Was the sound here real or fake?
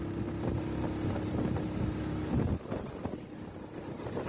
real